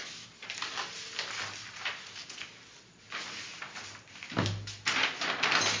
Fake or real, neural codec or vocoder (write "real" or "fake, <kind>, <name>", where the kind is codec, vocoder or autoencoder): real